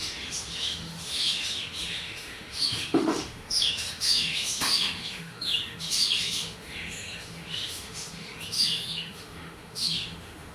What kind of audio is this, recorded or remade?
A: remade